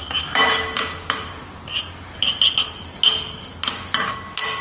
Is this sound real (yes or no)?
yes